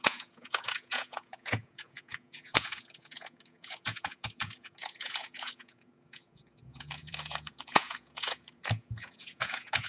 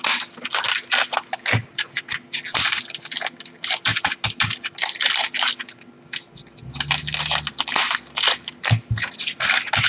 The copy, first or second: first